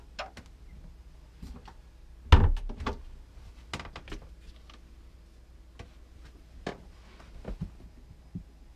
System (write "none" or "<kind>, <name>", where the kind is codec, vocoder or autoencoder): none